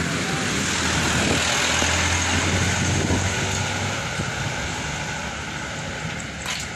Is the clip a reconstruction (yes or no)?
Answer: no